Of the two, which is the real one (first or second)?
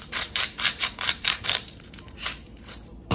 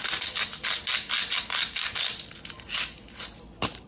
second